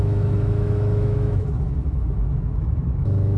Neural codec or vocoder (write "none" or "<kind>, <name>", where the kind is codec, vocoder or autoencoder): autoencoder, DAC-VAE